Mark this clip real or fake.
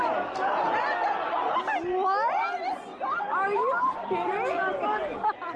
real